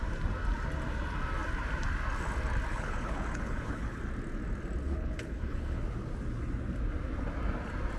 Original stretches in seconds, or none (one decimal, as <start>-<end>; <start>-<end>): 0.0-2.7; 4.0-4.8; 5.8-8.0